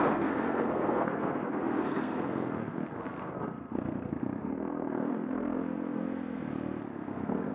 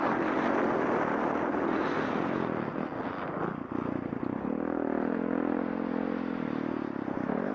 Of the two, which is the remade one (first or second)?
first